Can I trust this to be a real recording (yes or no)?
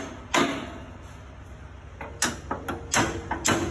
yes